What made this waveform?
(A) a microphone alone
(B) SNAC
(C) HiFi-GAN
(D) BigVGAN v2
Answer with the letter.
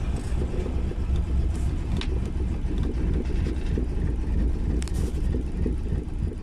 A